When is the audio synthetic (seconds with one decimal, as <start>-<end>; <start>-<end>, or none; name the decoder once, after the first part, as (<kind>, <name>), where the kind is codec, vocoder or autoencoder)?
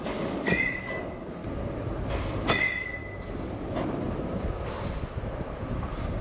0.0-1.4 (codec, DAC); 2.6-3.0